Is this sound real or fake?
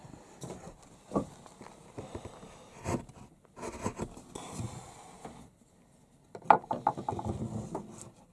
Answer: real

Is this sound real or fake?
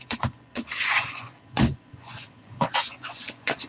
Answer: fake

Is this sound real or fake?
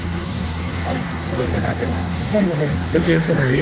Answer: fake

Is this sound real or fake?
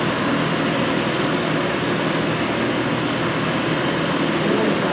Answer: real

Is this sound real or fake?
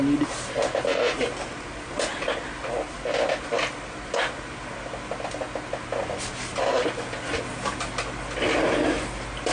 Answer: real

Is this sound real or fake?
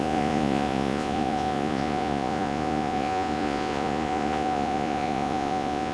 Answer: fake